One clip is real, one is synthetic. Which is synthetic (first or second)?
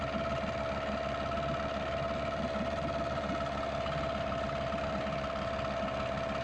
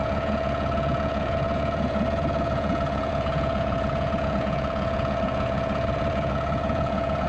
second